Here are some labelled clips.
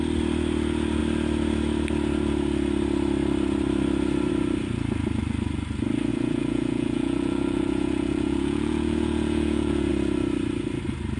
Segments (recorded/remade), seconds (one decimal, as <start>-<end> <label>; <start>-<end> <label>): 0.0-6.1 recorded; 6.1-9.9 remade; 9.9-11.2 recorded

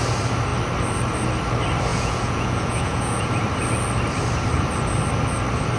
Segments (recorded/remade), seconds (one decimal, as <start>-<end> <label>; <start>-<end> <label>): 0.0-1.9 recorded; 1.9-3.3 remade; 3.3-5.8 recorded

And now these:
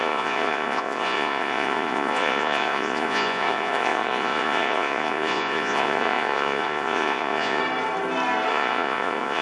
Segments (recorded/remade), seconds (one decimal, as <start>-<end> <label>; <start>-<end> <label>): 0.0-7.6 remade; 7.6-8.5 recorded; 8.5-9.4 remade